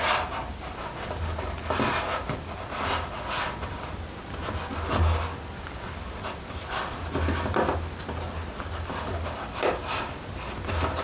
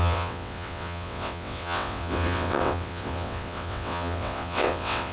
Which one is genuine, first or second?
first